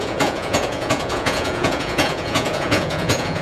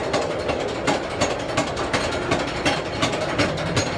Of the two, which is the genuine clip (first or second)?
second